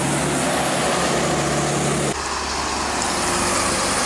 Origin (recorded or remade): recorded